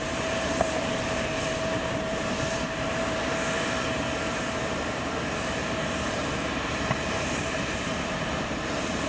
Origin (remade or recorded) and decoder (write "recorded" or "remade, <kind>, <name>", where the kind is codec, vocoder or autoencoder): remade, vocoder, BigVGAN v2